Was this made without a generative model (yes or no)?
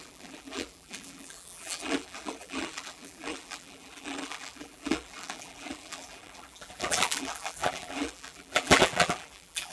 no